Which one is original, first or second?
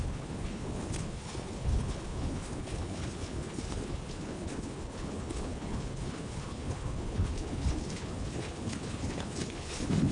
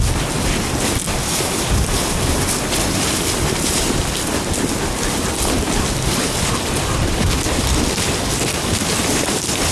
second